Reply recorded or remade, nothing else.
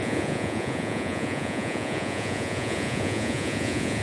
remade